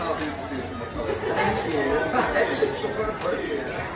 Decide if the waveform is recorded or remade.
recorded